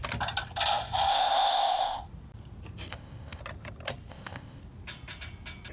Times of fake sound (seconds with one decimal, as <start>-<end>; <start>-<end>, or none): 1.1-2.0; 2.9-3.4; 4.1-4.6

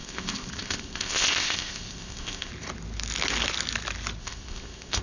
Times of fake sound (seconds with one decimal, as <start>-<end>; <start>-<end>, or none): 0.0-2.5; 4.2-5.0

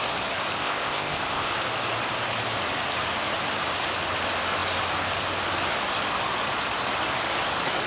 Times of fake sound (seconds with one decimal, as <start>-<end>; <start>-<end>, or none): 0.6-1.5